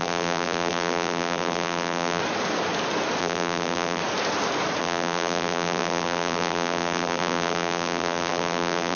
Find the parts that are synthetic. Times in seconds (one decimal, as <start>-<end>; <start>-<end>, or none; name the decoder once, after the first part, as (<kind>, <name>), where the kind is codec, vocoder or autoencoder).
0.0-2.2 (vocoder, BigVGAN v2); 3.2-4.0; 4.8-9.0